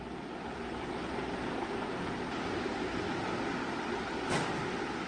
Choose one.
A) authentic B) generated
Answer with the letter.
A